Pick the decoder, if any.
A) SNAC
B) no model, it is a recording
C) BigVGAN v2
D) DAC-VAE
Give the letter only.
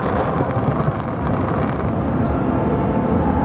B